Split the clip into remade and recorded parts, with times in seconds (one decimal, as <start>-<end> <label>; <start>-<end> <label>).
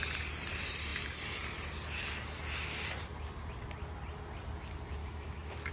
0.0-5.0 recorded; 5.0-5.7 remade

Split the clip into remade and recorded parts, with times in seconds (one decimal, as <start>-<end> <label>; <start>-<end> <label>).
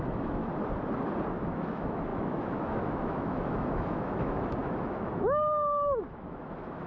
0.0-0.4 remade; 0.4-1.3 recorded; 1.3-6.9 remade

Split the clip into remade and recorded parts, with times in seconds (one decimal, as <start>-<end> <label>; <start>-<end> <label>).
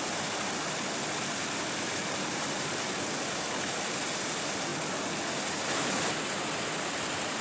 0.0-7.4 recorded